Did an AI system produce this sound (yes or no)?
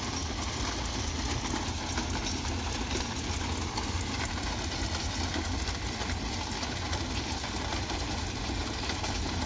no